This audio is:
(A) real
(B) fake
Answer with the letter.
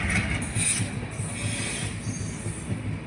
A